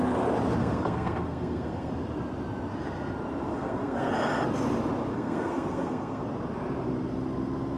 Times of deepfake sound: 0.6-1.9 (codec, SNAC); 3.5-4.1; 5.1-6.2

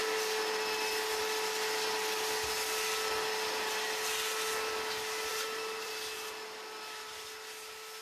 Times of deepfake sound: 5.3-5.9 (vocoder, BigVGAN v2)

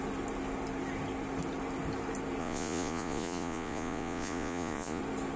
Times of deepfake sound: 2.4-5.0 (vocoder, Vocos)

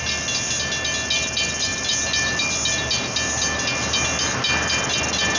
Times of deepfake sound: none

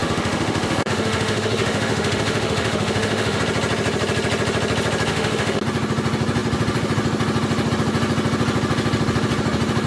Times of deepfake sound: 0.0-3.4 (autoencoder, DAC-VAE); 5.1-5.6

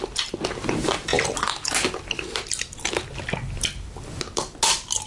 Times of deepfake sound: none

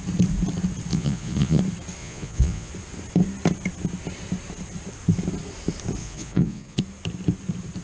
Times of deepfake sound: 0.9-1.6 (vocoder, Vocos); 2.0-2.7; 6.0-6.8

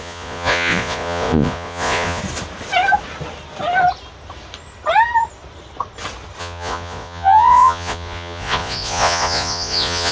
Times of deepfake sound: 0.0-2.2 (vocoder, Vocos); 6.4-10.1